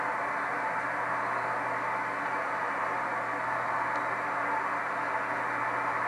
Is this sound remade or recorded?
recorded